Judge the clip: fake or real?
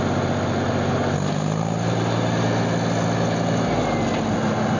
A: real